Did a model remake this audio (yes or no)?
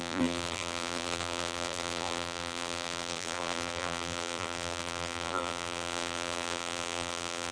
yes